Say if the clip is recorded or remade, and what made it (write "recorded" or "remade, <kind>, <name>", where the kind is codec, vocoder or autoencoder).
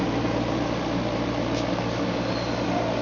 recorded